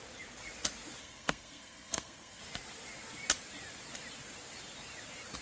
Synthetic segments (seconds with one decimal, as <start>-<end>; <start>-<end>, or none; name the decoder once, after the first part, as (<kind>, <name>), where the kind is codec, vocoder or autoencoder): 1.0-2.4 (codec, SNAC)